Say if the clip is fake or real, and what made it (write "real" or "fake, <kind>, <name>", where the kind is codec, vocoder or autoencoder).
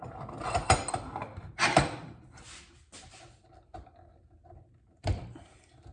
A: real